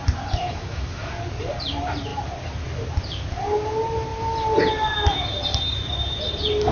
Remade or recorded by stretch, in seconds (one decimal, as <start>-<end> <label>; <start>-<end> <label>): 0.0-0.4 recorded; 0.4-1.1 remade; 1.1-6.7 recorded